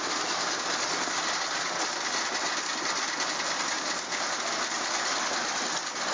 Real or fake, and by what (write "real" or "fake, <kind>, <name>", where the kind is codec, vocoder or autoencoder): real